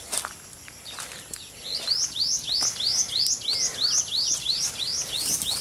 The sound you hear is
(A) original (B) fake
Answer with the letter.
A